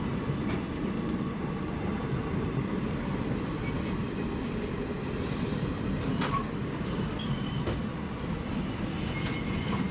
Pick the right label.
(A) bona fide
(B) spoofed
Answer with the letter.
A